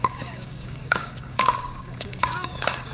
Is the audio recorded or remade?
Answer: remade